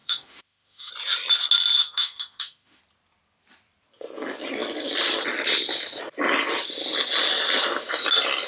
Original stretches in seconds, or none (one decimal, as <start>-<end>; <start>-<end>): 0.9-1.8; 2.8-8.5